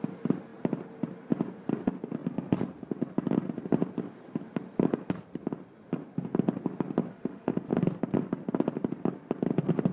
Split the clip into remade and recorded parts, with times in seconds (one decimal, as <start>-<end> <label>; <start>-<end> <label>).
0.0-7.1 recorded; 7.1-7.7 remade; 7.7-9.9 recorded